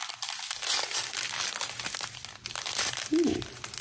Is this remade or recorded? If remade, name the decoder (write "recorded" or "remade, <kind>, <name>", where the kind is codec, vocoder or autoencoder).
recorded